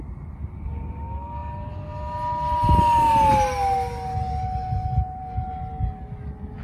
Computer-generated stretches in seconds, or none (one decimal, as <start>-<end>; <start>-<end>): none